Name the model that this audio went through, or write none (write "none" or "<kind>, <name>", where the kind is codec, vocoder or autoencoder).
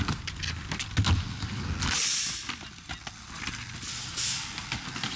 none